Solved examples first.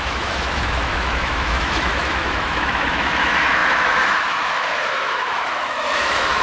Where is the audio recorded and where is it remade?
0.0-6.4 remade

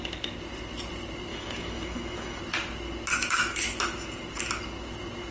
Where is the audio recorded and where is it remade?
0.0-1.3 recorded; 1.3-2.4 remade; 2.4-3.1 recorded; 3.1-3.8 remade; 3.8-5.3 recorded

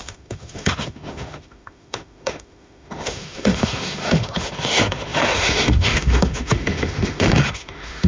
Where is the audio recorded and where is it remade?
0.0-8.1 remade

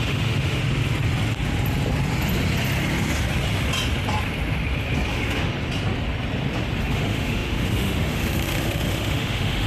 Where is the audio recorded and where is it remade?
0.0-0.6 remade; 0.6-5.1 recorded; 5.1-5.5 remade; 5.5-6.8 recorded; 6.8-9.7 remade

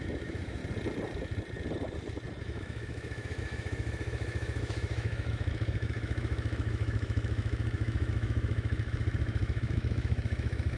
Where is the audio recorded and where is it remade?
0.0-0.6 remade; 0.6-2.4 recorded; 2.4-10.8 remade